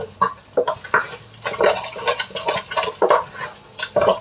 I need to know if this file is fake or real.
real